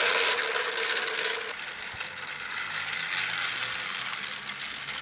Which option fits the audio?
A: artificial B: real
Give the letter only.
B